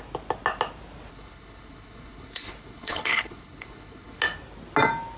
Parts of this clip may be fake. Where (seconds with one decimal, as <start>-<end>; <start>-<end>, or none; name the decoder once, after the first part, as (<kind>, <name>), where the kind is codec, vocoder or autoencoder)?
1.1-4.2 (codec, HILCodec)